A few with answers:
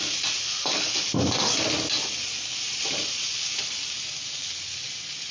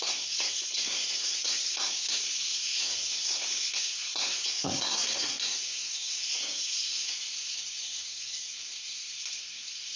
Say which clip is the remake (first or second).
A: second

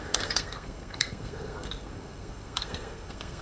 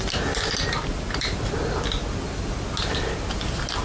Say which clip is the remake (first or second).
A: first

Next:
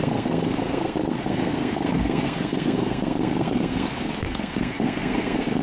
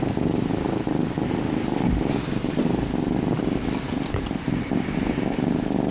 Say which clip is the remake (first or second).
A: first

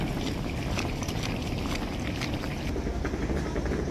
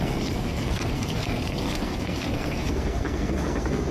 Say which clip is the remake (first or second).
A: second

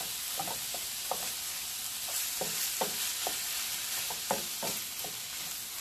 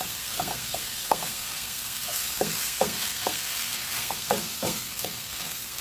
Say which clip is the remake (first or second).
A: second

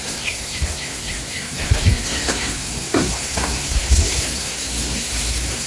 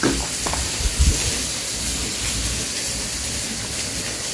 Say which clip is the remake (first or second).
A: first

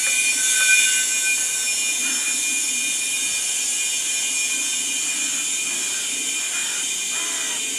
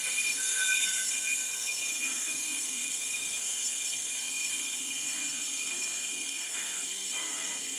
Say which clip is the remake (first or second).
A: second